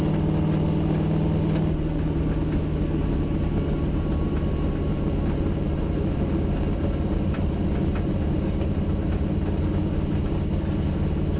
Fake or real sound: real